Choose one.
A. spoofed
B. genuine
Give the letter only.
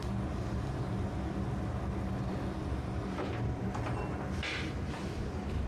B